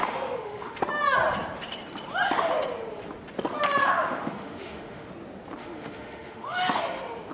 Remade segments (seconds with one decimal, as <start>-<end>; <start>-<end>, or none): 0.0-0.8; 3.8-5.1; 5.6-6.8